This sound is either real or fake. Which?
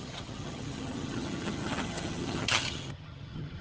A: fake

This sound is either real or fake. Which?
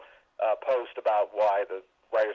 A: real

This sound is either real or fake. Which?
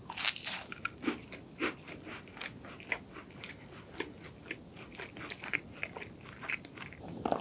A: real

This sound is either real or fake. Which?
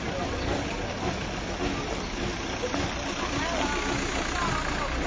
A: real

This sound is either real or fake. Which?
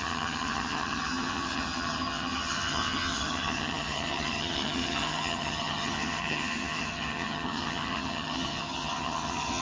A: fake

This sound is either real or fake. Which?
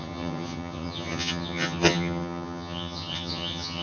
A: fake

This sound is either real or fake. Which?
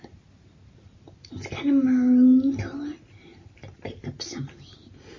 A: real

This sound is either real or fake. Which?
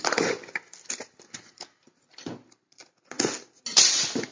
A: real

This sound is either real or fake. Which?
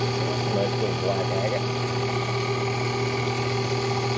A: real